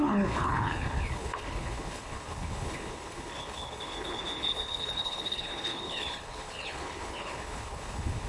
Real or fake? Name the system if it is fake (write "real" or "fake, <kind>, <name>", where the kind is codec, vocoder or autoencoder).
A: fake, codec, HILCodec